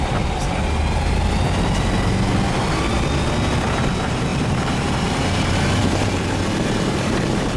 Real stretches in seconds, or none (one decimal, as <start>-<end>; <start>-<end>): 0.0-4.3